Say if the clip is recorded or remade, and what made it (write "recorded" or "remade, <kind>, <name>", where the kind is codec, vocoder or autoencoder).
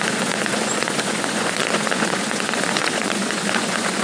remade, vocoder, Vocos